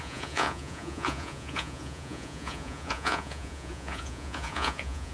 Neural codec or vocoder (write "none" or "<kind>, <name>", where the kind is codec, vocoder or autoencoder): vocoder, Vocos